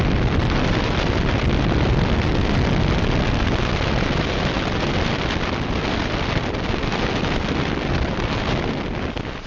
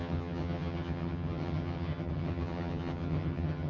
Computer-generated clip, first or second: second